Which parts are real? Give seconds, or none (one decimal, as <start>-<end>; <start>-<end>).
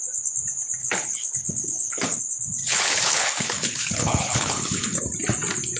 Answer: 0.0-0.8; 2.2-2.6; 5.0-5.8